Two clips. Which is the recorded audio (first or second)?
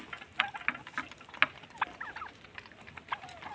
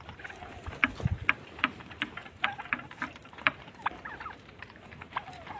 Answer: first